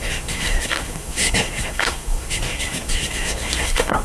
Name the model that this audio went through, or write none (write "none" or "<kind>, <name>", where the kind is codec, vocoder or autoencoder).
codec, SNAC